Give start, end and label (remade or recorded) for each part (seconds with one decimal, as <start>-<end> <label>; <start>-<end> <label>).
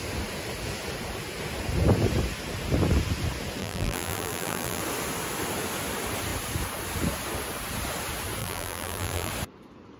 0.0-3.6 recorded; 3.6-4.8 remade; 4.8-8.4 recorded; 8.4-9.3 remade; 9.3-10.0 recorded